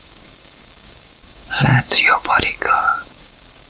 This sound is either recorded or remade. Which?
remade